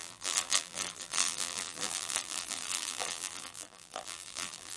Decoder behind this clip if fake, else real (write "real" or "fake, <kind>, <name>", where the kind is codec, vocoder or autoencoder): fake, vocoder, BigVGAN v2